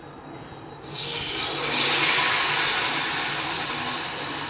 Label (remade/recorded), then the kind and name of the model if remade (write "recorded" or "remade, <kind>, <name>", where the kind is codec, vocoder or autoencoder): recorded